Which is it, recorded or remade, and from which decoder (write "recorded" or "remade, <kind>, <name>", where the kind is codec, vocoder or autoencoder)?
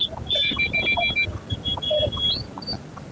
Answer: recorded